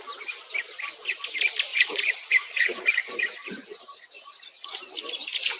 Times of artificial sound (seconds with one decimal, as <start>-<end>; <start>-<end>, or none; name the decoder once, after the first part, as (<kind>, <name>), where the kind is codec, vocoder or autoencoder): 1.7-2.8 (vocoder, Vocos); 3.4-4.8